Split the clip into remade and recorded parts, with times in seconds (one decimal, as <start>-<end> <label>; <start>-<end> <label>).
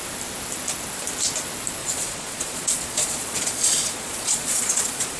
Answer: 0.0-1.8 recorded; 1.8-5.2 remade